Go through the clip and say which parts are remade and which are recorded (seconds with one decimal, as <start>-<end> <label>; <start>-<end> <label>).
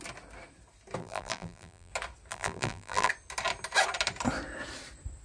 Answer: 0.0-1.0 recorded; 1.0-1.9 remade; 1.9-2.3 recorded; 2.3-3.1 remade; 3.1-5.2 recorded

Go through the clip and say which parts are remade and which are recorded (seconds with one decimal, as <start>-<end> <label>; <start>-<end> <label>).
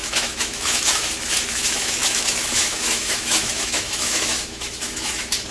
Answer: 0.0-5.5 remade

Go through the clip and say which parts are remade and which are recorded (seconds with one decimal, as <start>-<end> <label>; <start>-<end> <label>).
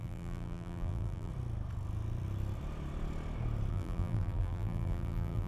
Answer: 0.0-1.3 remade; 1.3-3.7 recorded; 3.7-5.5 remade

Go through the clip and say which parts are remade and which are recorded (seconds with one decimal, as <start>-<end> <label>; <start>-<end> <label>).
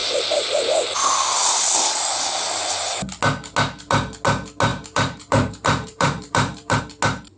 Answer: 0.0-4.7 recorded; 4.7-6.8 remade; 6.8-7.4 recorded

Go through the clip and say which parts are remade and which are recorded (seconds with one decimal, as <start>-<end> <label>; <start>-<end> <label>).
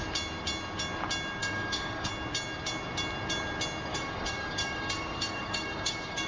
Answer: 0.0-1.4 recorded; 1.4-2.1 remade; 2.1-3.9 recorded; 3.9-6.3 remade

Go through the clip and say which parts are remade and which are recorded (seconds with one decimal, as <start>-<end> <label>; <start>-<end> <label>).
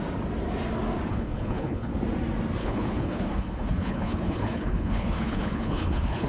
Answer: 0.0-1.1 recorded; 1.1-1.9 remade; 1.9-2.6 recorded; 2.6-6.3 remade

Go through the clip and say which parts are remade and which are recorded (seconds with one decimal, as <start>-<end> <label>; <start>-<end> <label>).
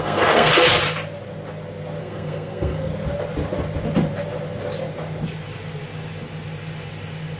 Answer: 0.0-0.5 remade; 0.5-2.0 recorded; 2.0-2.9 remade; 2.9-7.4 recorded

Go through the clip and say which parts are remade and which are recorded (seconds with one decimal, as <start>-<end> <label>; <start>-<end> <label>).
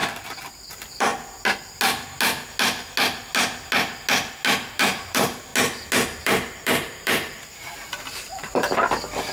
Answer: 0.0-0.7 recorded; 0.7-1.1 remade; 1.1-4.8 recorded; 4.8-5.5 remade; 5.5-6.2 recorded; 6.2-9.3 remade